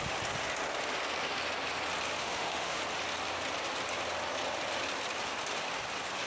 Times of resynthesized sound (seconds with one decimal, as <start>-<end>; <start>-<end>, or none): 2.2-2.8